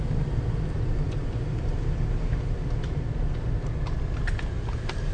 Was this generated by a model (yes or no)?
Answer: no